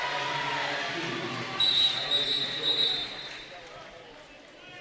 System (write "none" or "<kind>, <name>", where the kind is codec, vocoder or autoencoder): none